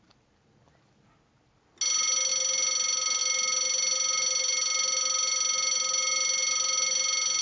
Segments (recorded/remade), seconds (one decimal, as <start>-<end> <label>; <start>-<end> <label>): 0.0-7.4 recorded